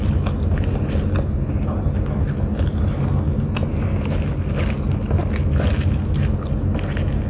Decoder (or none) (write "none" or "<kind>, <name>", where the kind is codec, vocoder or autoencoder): none